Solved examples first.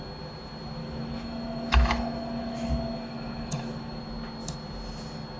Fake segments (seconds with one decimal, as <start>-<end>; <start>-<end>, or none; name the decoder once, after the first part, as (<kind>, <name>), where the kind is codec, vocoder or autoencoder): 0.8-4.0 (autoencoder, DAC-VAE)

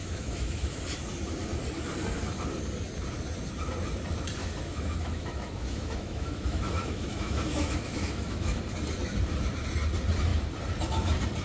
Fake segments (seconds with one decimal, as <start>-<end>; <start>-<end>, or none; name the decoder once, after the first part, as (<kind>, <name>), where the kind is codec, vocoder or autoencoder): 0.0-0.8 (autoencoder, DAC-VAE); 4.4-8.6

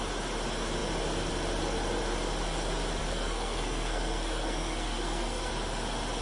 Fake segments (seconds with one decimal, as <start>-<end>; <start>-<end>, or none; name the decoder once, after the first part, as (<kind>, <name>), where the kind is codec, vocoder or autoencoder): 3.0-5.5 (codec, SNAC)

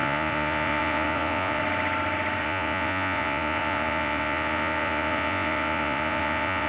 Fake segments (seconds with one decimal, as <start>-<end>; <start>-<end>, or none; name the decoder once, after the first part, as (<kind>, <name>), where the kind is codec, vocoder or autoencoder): 0.0-1.6 (vocoder, Vocos); 2.4-6.7

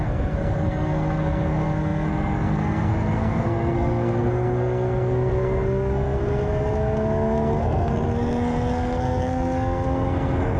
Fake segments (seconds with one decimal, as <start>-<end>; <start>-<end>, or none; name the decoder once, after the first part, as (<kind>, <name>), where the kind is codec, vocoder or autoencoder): 0.0-10.6 (codec, SNAC)

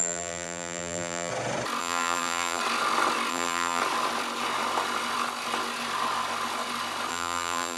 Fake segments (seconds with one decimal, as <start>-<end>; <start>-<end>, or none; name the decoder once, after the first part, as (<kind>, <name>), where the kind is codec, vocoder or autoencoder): 0.0-1.3 (vocoder, BigVGAN v2); 1.8-2.6; 3.3-3.8; 7.1-7.8